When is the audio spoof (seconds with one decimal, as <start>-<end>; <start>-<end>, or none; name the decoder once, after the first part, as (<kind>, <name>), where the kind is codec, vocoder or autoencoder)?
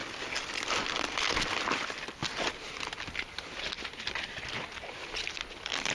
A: none